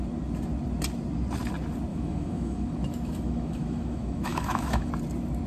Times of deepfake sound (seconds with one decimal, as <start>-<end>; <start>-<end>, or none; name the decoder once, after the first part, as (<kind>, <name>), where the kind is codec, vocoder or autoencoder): 1.9-4.9 (autoencoder, DAC-VAE)